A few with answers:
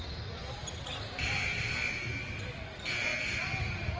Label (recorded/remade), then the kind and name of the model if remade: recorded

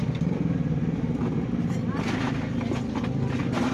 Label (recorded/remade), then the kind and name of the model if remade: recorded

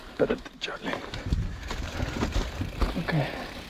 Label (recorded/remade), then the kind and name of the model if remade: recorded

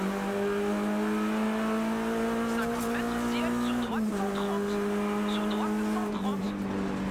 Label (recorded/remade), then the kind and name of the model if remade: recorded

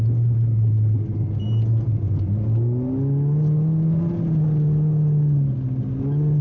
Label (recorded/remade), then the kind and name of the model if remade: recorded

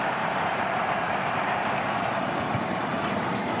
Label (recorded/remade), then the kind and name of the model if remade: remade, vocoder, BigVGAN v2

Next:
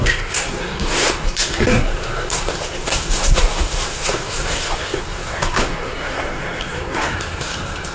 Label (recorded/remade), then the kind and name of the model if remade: remade, codec, SNAC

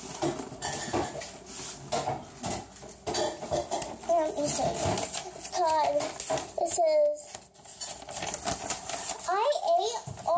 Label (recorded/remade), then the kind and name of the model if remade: recorded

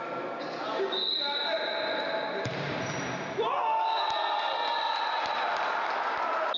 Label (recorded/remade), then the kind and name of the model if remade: recorded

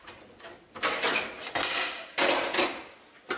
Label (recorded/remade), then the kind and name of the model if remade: recorded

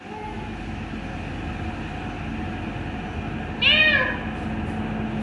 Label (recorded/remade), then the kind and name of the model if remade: recorded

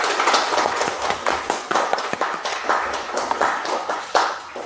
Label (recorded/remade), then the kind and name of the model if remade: remade, vocoder, Vocos